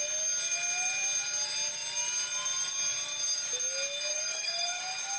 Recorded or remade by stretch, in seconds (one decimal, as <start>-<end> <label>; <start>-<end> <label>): 0.0-4.1 recorded; 4.1-4.8 remade; 4.8-5.2 recorded